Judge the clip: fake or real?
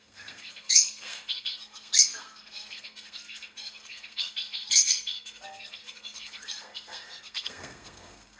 fake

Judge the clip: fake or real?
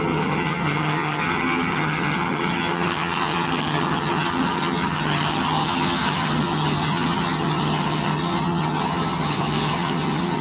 fake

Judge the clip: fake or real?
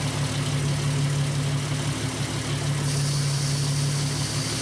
real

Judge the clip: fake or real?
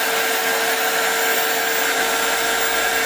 real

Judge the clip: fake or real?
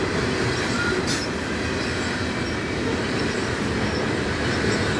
real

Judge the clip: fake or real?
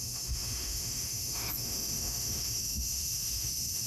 fake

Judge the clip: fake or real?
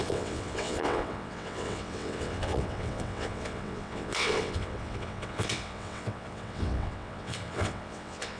fake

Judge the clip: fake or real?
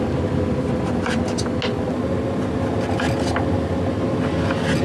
real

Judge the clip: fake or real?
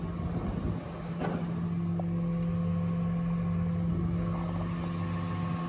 real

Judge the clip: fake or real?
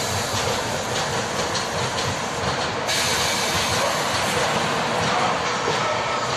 real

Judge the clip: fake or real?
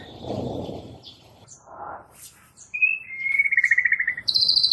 fake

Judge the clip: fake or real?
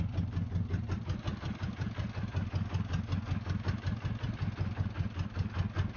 real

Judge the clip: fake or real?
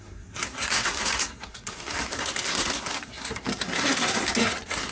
fake